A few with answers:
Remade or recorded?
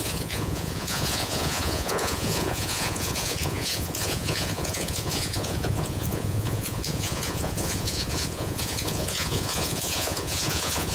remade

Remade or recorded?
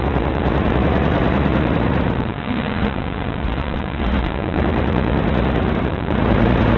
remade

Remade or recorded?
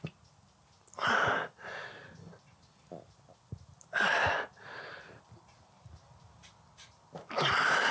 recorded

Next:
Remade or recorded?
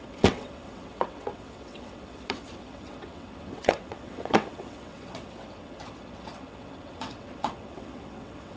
remade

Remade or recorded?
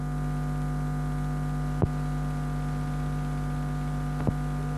recorded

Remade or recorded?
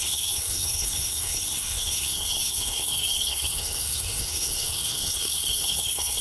remade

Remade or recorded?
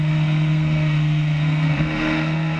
remade